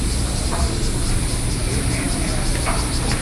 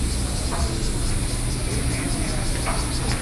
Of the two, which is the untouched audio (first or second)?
second